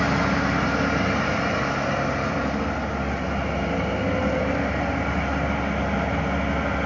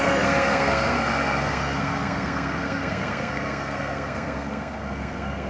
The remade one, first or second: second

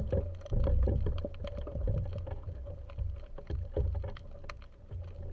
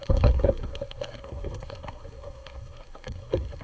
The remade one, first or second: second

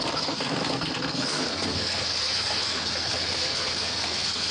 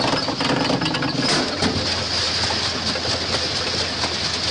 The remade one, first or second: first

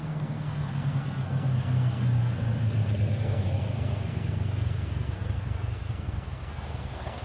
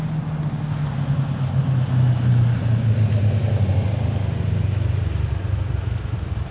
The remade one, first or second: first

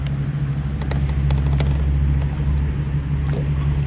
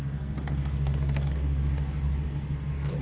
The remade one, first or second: second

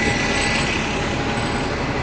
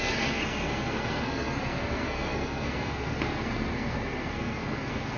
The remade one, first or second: second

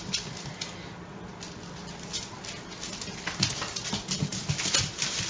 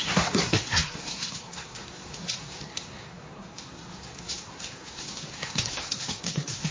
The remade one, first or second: second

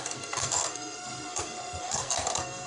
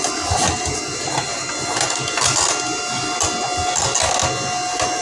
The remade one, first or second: first